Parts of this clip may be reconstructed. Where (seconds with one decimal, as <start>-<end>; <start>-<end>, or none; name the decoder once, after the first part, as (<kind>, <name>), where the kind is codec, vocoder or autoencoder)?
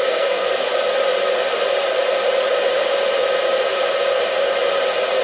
0.0-0.7 (codec, SNAC)